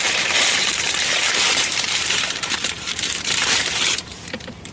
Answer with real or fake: fake